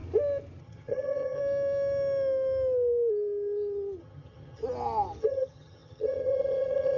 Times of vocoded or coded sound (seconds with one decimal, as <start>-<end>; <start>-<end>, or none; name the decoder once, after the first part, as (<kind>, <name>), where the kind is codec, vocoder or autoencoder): 0.6-1.4 (vocoder, HiFi-GAN); 4.0-4.6; 5.2-7.0